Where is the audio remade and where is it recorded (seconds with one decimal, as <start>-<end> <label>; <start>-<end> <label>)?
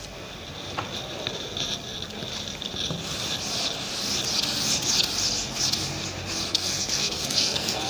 0.0-6.5 recorded; 6.5-7.9 remade